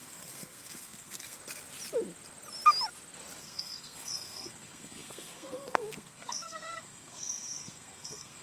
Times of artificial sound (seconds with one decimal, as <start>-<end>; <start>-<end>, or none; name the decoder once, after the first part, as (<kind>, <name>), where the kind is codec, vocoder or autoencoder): 0.0-1.4 (codec, SNAC); 3.4-8.4